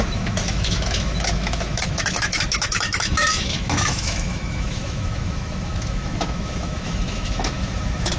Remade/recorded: remade